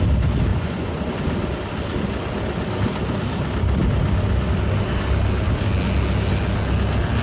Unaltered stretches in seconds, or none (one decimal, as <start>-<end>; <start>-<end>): 0.0-0.5; 1.1-7.2